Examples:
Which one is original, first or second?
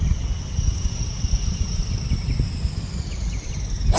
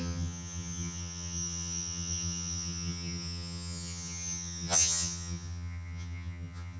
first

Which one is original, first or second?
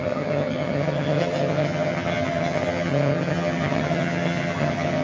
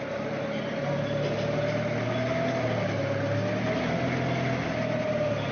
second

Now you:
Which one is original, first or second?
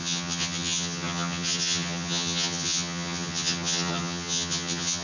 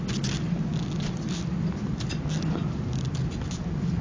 second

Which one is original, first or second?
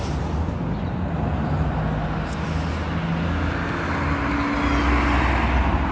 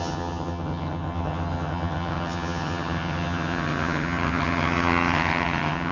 first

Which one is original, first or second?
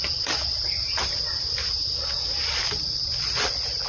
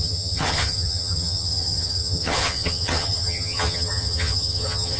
first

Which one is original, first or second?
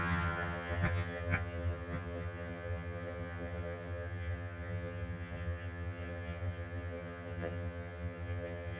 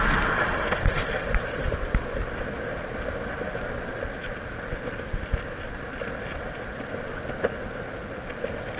second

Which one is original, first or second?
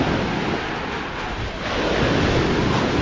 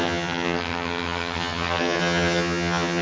first